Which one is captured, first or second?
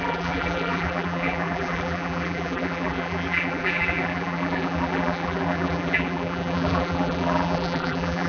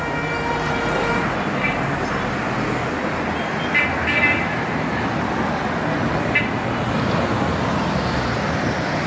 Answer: second